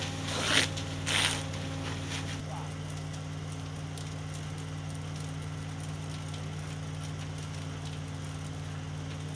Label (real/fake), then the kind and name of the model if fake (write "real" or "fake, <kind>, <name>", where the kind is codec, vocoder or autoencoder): real